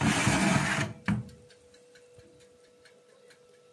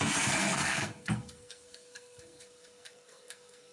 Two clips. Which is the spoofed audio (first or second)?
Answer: second